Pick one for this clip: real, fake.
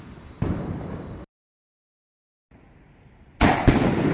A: fake